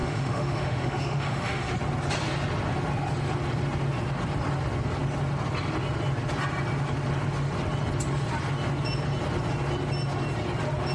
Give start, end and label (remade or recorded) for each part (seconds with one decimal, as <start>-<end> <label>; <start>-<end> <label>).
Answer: 0.0-1.7 remade; 1.7-10.9 recorded